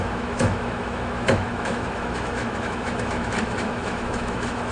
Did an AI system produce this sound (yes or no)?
yes